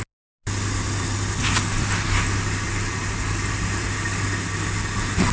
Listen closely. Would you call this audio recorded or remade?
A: recorded